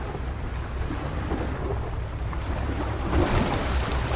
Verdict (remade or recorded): remade